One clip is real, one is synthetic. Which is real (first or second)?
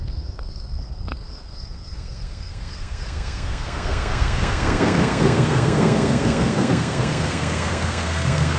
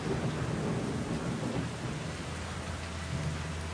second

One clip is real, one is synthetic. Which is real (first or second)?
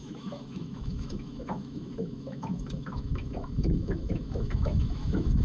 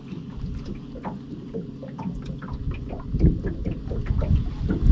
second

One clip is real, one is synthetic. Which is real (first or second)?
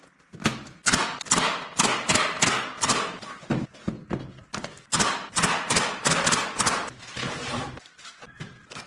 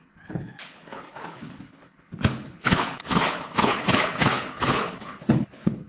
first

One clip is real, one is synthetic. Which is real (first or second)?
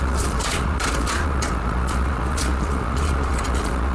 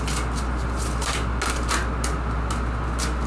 second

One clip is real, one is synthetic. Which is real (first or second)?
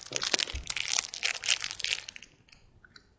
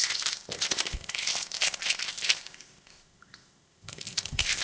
first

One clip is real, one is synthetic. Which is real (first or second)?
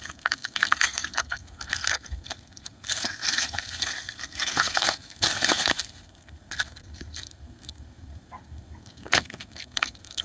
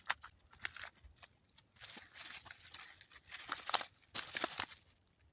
second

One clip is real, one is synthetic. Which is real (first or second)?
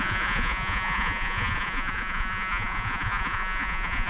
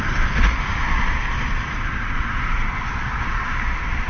second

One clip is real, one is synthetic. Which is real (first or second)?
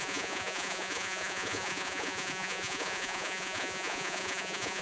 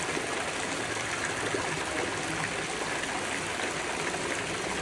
second